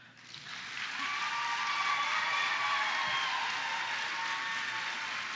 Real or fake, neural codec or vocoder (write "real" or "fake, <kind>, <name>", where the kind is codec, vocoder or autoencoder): real